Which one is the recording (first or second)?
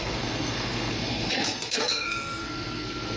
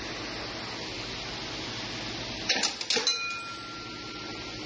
second